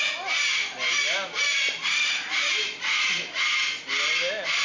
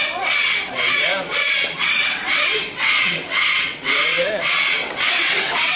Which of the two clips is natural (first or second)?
first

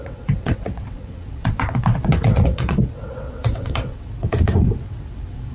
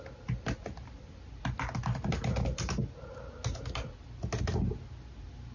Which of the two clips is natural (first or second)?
second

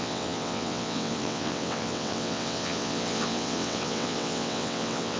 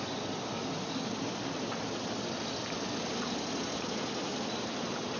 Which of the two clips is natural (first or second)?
second